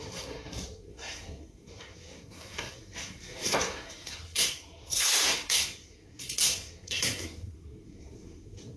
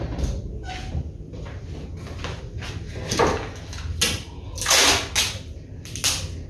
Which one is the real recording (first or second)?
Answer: second